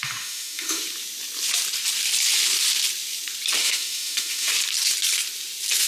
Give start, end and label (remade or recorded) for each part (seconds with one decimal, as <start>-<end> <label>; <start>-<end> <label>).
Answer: 0.0-0.8 remade; 0.8-3.6 recorded; 3.6-4.5 remade; 4.5-5.9 recorded